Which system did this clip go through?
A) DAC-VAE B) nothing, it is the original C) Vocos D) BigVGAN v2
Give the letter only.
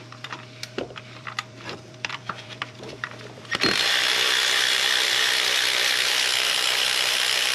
D